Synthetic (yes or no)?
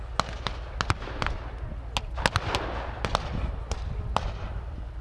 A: no